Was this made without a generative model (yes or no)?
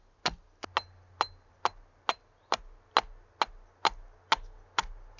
yes